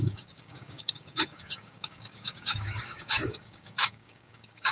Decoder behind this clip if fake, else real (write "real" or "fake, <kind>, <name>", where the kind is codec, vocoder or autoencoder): fake, codec, DAC